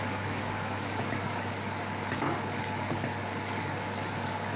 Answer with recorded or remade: remade